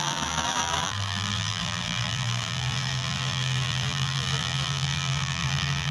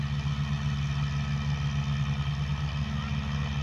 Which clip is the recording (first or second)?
second